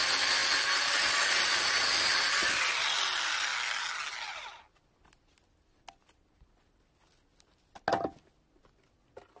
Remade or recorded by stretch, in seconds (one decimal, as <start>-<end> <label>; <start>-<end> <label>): 0.0-9.4 recorded